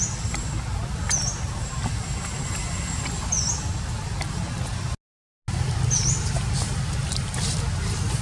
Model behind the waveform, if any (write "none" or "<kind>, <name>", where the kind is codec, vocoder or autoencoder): none